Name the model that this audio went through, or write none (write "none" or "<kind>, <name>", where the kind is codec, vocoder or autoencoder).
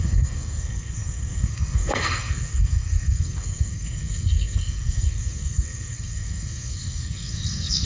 codec, SNAC